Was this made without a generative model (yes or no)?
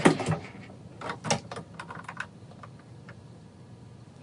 yes